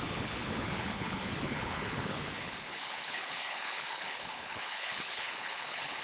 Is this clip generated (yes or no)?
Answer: yes